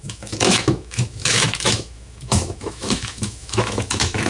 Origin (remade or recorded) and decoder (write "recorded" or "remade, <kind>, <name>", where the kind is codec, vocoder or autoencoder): remade, autoencoder, DAC-VAE